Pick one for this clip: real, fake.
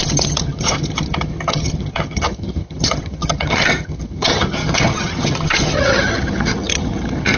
fake